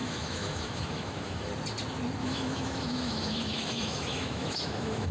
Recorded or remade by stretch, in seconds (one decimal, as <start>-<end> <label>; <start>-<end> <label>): 0.0-1.5 remade; 1.5-2.2 recorded; 2.2-5.1 remade